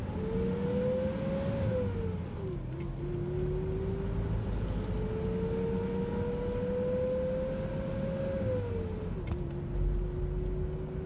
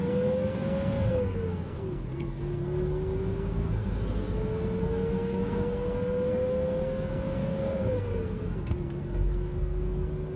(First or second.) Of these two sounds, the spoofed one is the second